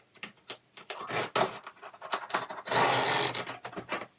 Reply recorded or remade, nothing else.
recorded